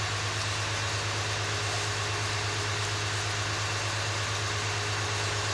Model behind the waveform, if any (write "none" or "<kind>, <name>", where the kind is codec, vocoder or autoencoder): none